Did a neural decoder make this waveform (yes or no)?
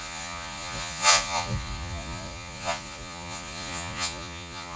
yes